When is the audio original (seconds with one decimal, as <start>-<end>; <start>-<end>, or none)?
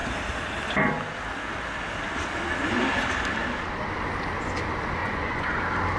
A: 0.0-5.0; 5.6-6.0